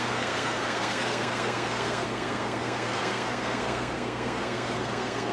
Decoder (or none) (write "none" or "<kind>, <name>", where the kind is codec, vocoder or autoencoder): codec, SNAC